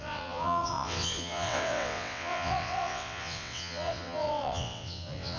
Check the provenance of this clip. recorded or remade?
remade